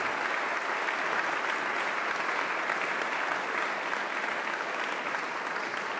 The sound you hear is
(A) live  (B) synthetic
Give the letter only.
A